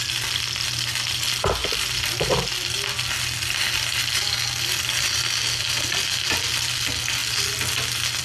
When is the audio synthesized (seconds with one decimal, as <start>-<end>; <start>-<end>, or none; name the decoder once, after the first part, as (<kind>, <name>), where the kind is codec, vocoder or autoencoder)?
none